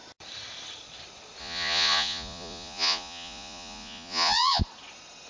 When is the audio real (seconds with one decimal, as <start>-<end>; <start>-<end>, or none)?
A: 0.0-1.4; 4.6-5.3